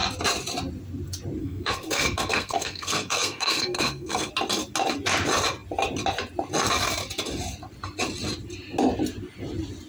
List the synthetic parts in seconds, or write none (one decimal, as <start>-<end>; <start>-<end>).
1.4-4.3